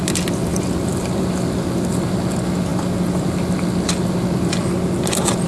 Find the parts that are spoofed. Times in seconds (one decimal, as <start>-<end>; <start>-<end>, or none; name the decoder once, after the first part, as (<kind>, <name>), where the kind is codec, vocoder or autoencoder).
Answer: 4.6-5.5 (vocoder, BigVGAN v2)